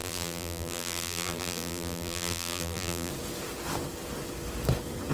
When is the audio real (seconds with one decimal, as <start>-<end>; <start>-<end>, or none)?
3.1-5.1